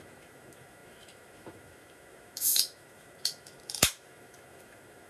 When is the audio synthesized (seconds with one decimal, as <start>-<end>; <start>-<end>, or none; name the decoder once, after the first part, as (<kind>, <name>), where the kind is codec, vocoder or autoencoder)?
0.0-5.1 (autoencoder, DAC-VAE)